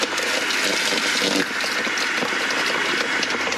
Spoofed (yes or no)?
yes